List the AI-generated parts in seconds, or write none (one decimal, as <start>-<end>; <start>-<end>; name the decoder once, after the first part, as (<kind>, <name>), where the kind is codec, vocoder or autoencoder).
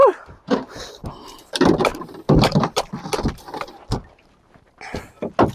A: 0.0-1.4 (vocoder, BigVGAN v2)